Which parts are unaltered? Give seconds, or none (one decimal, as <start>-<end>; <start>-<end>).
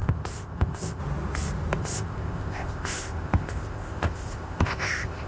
1.0-1.8